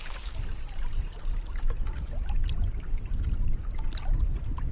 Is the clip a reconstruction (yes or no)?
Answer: no